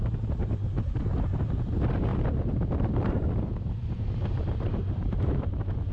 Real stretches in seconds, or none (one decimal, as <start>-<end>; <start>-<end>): 0.0-0.4; 1.0-2.1; 5.4-5.9

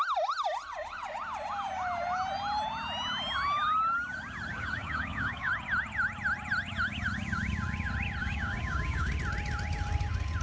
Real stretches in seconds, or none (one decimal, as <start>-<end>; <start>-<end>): 0.0-4.5; 5.5-8.2; 9.1-10.4

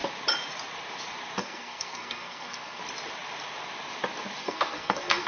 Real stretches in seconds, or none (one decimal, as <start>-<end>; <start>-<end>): 0.0-1.4; 2.8-4.4

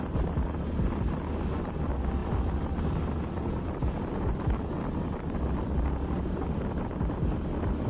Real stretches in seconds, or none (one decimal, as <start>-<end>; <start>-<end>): 0.0-2.2; 5.9-7.9

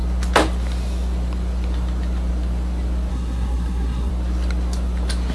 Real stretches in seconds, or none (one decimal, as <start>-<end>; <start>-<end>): 0.0-3.1; 4.1-5.3

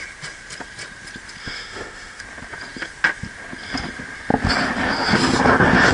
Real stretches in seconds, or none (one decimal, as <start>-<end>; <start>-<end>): 0.0-1.4; 2.2-5.9